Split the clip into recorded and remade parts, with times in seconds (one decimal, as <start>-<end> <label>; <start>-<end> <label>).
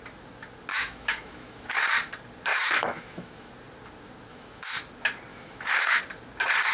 0.0-0.7 recorded; 0.7-1.8 remade; 1.8-2.5 recorded; 2.5-3.5 remade; 3.5-4.3 recorded; 4.3-4.8 remade; 4.8-5.3 recorded; 5.3-6.0 remade; 6.0-6.7 recorded